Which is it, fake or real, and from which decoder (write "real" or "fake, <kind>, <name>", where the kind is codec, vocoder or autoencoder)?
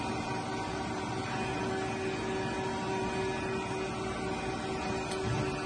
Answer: real